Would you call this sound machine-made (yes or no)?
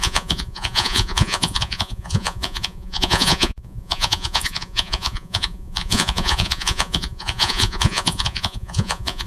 yes